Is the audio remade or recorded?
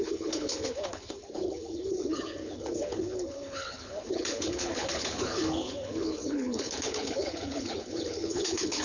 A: remade